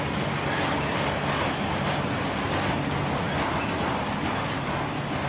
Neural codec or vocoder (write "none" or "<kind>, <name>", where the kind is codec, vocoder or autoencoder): none